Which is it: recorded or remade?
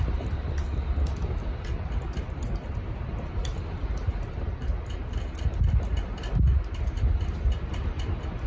recorded